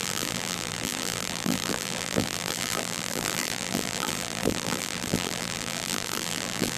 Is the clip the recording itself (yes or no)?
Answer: no